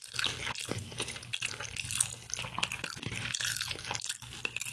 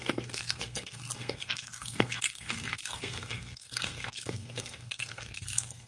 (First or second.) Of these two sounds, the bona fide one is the first